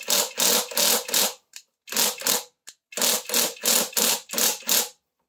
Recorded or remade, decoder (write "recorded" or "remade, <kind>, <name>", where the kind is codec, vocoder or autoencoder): recorded